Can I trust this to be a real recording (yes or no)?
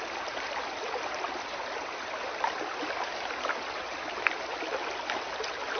yes